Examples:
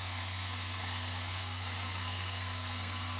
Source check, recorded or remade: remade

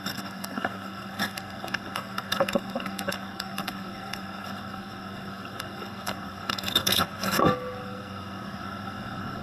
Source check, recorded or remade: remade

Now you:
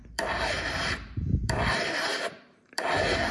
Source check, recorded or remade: remade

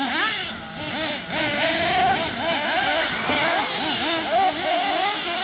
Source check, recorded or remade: recorded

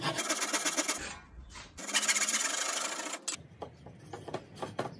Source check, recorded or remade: recorded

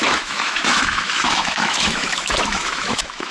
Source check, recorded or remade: remade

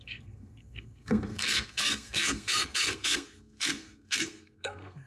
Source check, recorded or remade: remade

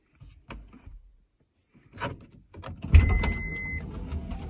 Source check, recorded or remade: recorded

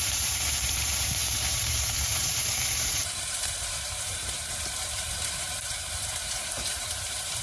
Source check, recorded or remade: remade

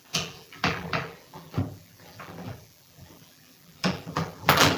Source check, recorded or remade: remade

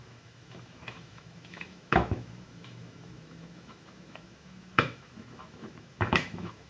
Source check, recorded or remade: remade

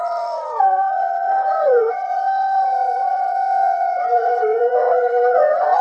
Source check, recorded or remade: remade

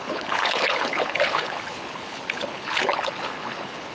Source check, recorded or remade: remade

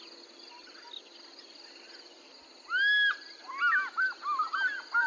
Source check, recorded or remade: recorded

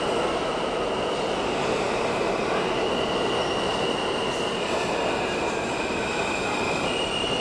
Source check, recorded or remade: recorded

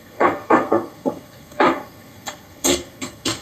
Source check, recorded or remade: remade